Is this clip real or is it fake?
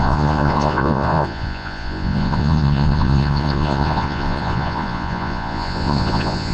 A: fake